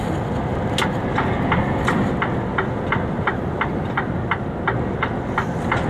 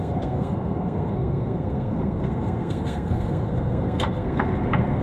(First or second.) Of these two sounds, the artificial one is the second